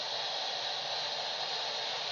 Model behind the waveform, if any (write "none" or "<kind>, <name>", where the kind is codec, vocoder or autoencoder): none